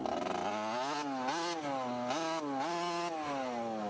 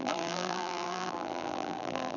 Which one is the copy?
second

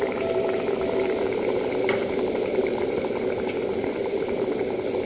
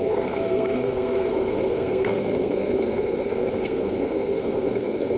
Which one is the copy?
second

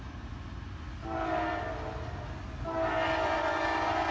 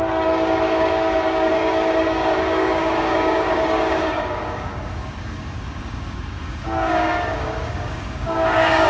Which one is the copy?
second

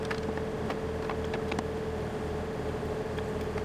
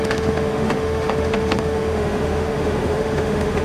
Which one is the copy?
second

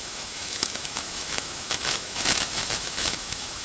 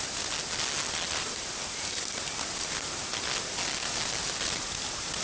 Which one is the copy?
first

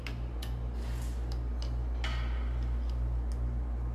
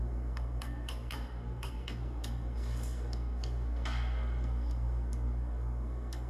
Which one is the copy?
second